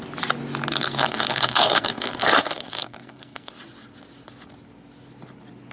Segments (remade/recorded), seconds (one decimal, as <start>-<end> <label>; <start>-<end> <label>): 0.0-0.7 recorded; 0.7-3.5 remade; 3.5-5.7 recorded